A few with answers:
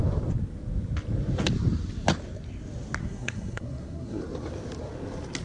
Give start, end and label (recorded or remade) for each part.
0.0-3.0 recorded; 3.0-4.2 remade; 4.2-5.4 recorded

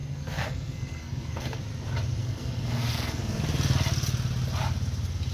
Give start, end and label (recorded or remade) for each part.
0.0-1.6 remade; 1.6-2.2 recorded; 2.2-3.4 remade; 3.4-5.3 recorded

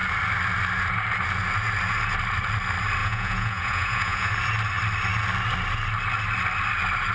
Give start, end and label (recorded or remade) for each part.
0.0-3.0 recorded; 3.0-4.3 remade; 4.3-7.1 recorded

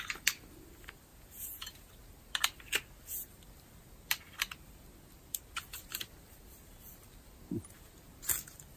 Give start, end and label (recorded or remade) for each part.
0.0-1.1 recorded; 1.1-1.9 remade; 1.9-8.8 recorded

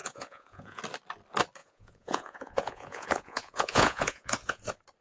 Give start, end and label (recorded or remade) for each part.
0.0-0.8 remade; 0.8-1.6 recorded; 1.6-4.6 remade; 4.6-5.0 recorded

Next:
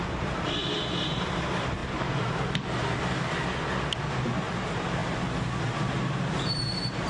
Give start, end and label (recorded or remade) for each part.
0.0-1.8 remade; 1.8-4.4 recorded; 4.4-5.0 remade; 5.0-5.6 recorded; 5.6-7.1 remade

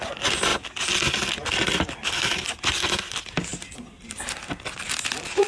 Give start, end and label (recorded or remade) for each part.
0.0-5.5 recorded

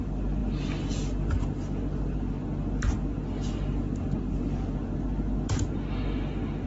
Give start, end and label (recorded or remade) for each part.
0.0-6.7 recorded